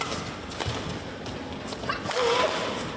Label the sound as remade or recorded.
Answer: recorded